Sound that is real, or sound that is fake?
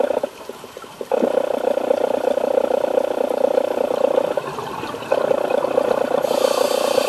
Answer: real